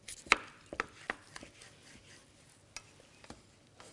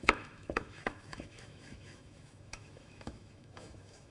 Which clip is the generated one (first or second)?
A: second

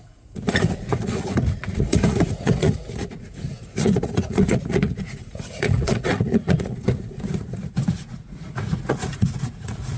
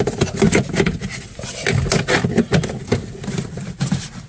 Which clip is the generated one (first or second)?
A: first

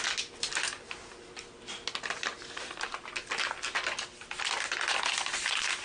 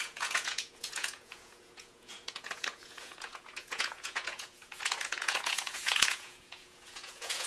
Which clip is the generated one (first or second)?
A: second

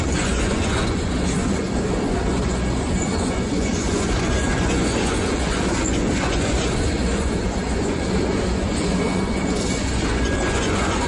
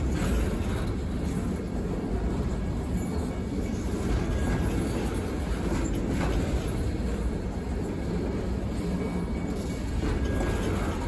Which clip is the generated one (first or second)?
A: first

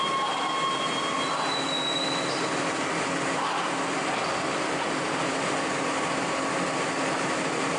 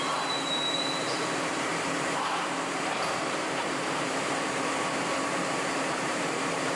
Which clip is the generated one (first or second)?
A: second